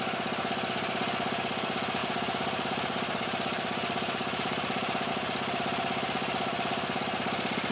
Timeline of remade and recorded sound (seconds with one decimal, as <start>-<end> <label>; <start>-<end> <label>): 0.0-2.0 recorded; 2.0-5.1 remade; 5.1-6.2 recorded; 6.2-7.0 remade; 7.0-7.7 recorded